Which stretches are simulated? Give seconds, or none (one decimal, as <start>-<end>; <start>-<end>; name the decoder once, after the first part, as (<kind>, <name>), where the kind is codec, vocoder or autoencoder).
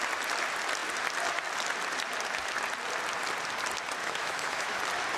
4.0-4.8 (autoencoder, DAC-VAE)